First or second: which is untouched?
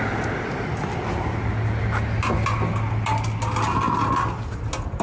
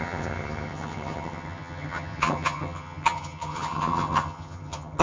first